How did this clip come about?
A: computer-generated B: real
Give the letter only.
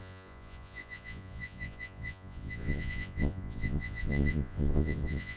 A